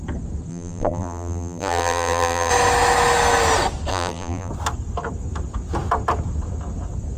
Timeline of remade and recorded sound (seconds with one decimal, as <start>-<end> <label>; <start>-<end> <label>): 0.0-0.5 recorded; 0.5-2.5 remade; 2.5-3.9 recorded; 3.9-4.5 remade; 4.5-7.2 recorded